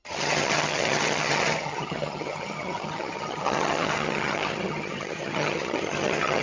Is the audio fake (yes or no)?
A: yes